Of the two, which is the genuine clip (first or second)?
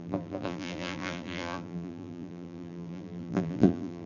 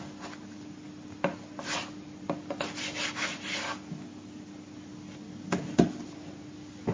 second